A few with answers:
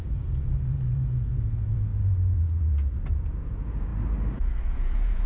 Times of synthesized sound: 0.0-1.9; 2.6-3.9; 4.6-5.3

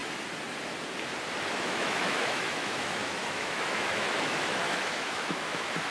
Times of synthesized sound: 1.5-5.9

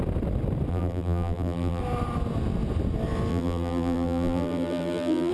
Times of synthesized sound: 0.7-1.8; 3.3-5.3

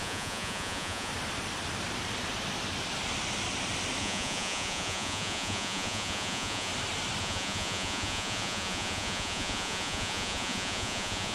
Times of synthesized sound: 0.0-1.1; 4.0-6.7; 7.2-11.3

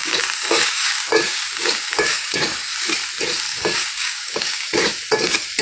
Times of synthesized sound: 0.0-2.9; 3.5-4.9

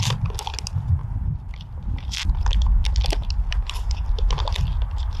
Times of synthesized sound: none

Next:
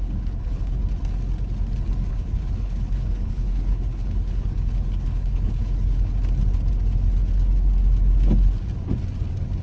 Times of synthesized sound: 0.0-0.8; 2.1-6.1